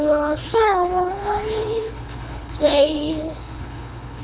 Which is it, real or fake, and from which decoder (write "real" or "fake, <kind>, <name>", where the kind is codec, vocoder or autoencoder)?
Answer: fake, codec, HILCodec